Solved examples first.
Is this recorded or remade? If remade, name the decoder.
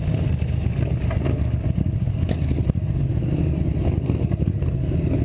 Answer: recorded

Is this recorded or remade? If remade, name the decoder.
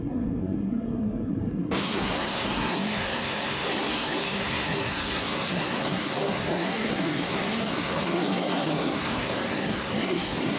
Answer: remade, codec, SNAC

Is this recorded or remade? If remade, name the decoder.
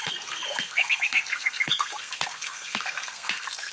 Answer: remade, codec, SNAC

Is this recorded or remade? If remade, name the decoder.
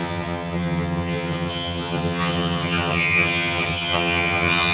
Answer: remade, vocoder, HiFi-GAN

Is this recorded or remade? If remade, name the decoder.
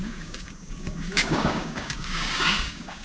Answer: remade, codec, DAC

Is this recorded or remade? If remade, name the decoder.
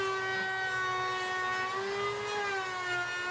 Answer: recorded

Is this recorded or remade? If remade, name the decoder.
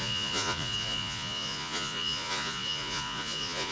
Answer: remade, vocoder, Vocos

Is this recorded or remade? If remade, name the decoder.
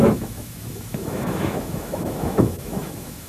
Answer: remade, autoencoder, DAC-VAE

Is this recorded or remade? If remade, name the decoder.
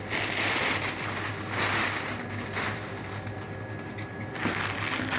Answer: recorded